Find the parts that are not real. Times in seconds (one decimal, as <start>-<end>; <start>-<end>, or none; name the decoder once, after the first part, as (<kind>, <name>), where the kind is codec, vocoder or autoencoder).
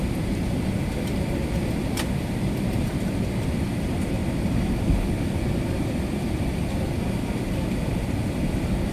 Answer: 0.0-4.2 (vocoder, BigVGAN v2); 5.2-8.9